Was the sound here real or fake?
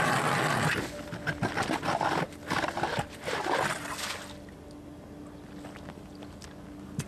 real